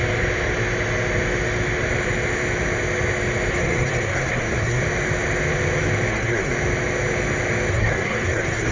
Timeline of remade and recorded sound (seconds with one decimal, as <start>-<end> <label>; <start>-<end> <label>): 0.0-3.5 recorded; 3.5-4.8 remade; 4.8-6.1 recorded; 6.1-6.5 remade; 6.5-7.7 recorded; 7.7-8.7 remade